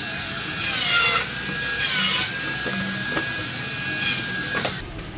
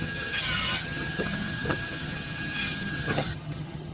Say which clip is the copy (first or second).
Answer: second